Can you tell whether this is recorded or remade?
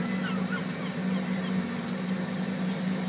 recorded